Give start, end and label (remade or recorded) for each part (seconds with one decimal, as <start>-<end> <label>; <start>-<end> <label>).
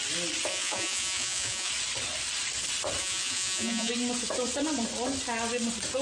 0.0-0.5 recorded; 0.5-1.7 remade; 1.7-3.0 recorded; 3.0-3.9 remade; 3.9-6.0 recorded